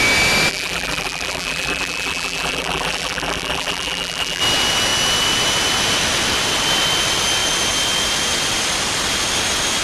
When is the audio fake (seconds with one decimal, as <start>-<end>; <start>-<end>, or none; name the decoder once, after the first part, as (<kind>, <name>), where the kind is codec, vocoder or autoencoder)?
0.5-4.4 (vocoder, BigVGAN v2)